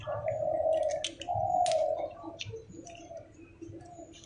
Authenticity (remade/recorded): recorded